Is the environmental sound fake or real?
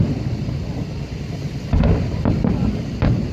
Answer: real